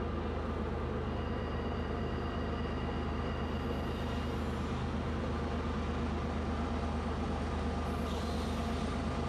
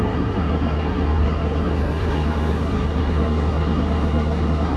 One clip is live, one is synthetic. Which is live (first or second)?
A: first